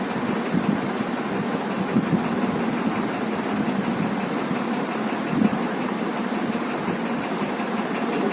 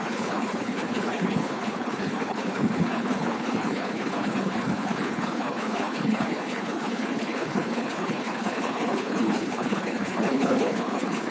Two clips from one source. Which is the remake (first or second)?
second